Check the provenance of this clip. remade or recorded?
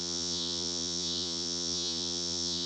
remade